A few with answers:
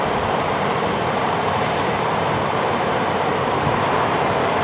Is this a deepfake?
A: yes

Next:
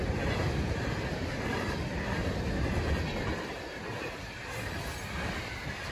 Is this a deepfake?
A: no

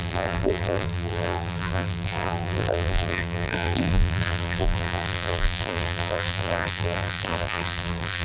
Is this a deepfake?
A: yes